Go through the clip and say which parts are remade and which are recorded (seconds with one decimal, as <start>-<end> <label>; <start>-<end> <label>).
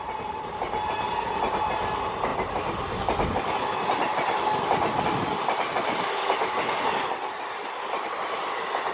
0.0-8.9 recorded